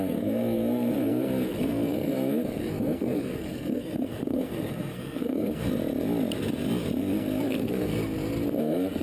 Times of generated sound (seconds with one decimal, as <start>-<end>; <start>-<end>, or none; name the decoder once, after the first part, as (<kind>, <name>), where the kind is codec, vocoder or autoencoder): 0.0-5.7 (codec, SNAC); 7.0-7.9; 8.6-9.0